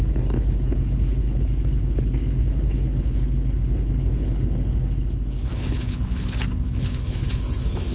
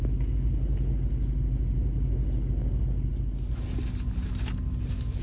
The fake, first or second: first